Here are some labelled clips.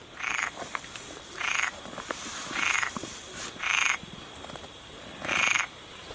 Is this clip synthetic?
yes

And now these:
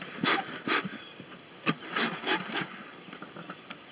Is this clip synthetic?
no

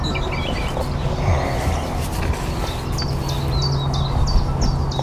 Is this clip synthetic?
no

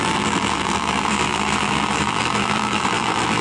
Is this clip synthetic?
yes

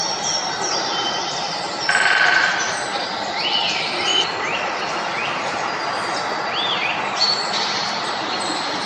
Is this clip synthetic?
no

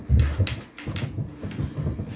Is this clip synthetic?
no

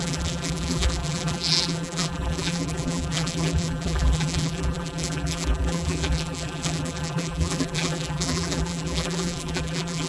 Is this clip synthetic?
yes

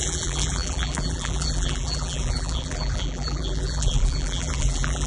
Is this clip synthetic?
yes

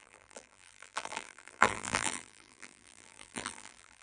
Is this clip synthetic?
yes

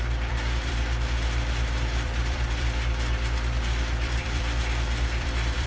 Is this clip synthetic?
yes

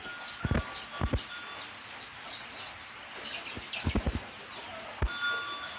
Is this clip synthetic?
no